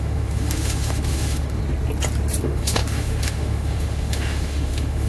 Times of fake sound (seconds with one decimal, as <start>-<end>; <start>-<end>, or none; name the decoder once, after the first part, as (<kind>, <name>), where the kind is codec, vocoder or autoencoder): 0.0-1.6 (autoencoder, DAC-VAE); 2.4-5.1